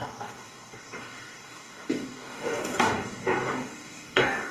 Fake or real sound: fake